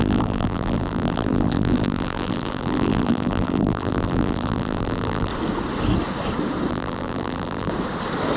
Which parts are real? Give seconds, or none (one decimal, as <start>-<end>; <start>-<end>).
5.3-6.7; 7.7-8.4